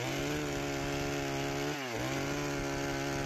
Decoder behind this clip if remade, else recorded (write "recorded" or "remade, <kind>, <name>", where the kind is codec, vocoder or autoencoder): recorded